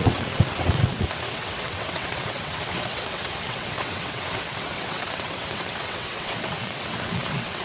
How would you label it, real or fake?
fake